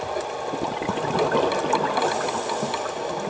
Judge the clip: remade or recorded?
recorded